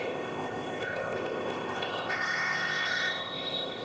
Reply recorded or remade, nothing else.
remade